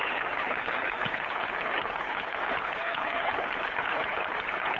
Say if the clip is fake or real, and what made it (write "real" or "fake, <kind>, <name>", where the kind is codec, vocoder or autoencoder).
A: fake, codec, HILCodec